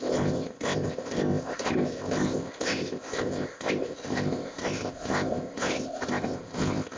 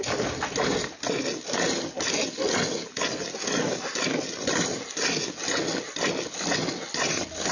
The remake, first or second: first